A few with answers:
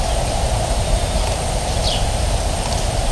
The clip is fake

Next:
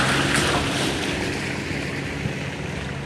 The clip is real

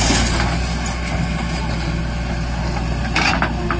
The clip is real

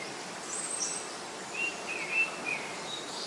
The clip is fake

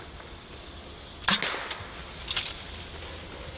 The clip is real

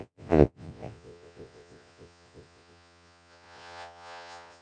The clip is fake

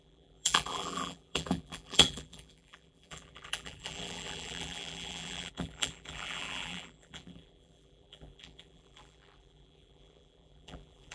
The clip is fake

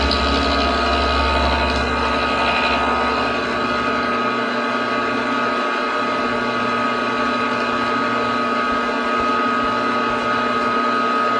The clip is real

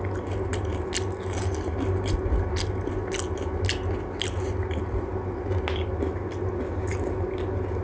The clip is real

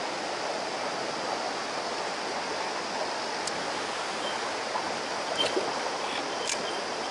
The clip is real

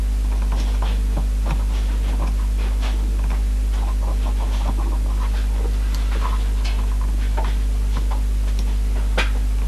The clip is real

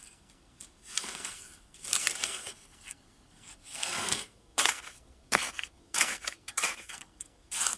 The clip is fake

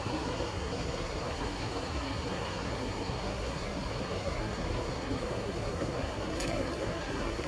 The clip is fake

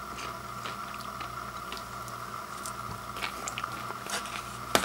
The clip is real